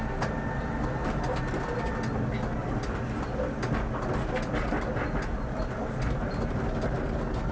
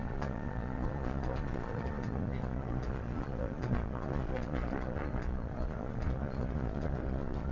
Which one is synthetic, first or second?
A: second